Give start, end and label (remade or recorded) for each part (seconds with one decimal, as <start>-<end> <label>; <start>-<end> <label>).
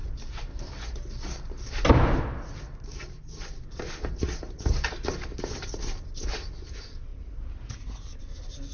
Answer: 0.0-8.7 recorded